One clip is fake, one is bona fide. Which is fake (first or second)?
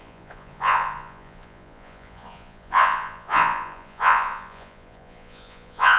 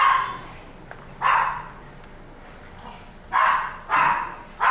first